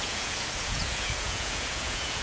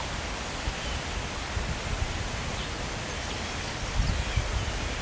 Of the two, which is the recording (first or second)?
second